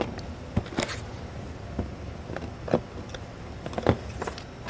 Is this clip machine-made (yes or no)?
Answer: no